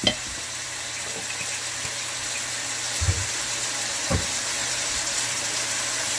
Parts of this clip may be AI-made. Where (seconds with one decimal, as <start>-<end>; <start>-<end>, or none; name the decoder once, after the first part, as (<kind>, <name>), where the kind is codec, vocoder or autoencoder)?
0.0-0.9 (vocoder, BigVGAN v2); 3.2-4.0; 4.6-5.8